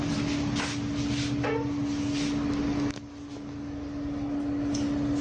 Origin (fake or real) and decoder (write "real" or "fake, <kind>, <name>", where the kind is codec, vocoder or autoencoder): real